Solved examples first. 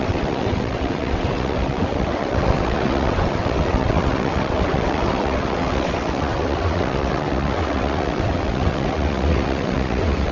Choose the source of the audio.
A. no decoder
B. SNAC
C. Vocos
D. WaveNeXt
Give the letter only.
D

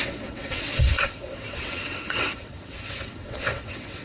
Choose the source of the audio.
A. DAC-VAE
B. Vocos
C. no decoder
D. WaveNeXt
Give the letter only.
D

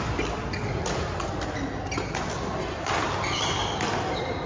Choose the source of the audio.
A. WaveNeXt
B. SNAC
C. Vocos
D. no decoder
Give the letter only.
D